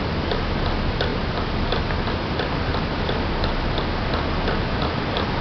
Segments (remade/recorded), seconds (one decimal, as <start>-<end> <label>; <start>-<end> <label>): 0.0-5.4 recorded